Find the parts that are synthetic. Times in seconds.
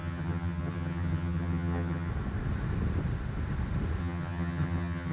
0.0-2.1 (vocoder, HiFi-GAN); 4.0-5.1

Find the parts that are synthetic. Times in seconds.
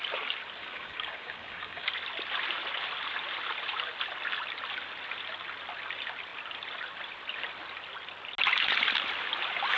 0.6-1.9 (codec, DAC)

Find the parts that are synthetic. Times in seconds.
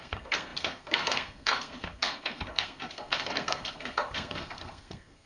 0.0-5.3 (codec, SNAC)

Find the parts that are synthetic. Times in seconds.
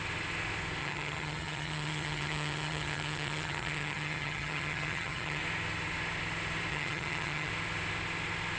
0.8-5.4 (vocoder, HiFi-GAN); 6.7-7.5